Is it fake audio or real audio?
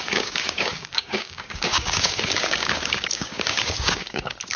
fake